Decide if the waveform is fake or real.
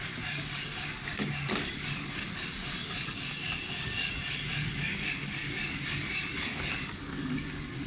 fake